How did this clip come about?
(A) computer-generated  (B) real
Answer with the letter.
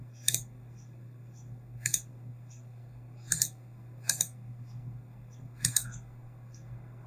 A